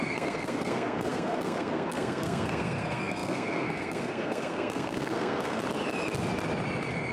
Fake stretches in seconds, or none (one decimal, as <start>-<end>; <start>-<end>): 0.0-5.6